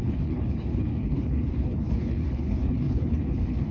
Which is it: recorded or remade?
remade